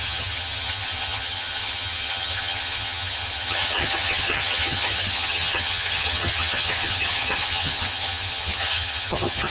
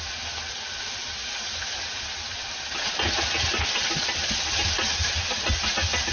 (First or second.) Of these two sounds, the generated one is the first